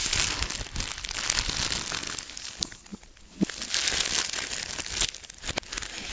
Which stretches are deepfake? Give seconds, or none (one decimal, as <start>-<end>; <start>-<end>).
none